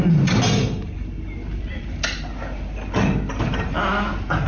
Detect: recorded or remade recorded